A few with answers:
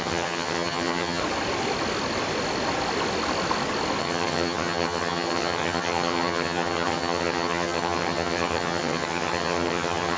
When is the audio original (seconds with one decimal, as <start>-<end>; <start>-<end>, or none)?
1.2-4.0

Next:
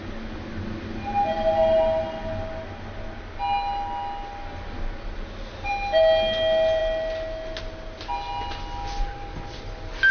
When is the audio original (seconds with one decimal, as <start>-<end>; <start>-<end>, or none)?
0.0-10.1

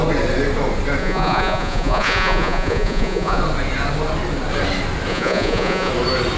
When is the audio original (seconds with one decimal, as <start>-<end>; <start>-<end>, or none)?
0.0-1.0; 3.4-5.1; 5.9-6.4

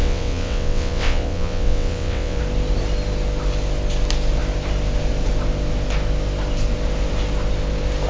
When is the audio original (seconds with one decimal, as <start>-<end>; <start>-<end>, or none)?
2.4-8.1

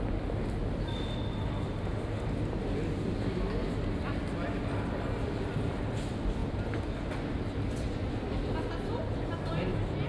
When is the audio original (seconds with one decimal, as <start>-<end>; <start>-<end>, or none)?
0.0-10.1

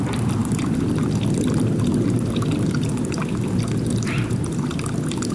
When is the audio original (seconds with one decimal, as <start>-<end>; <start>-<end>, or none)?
0.0-0.4; 1.0-5.3

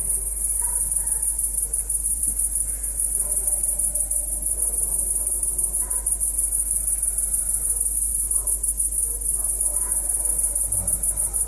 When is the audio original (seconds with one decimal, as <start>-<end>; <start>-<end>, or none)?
0.0-11.5